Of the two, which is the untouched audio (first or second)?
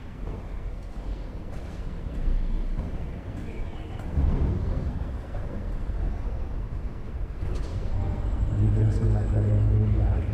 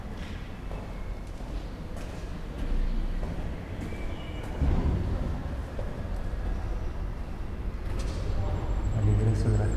second